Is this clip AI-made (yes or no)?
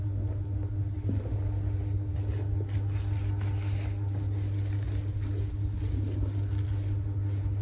no